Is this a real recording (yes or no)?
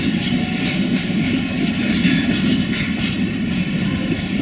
yes